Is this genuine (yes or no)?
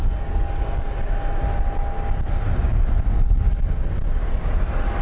yes